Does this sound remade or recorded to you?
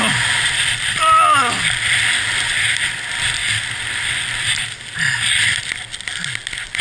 recorded